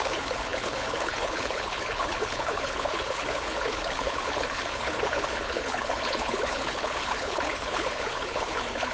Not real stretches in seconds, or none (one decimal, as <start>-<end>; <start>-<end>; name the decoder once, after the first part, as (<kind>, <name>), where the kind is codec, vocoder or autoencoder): 0.0-8.9 (codec, HILCodec)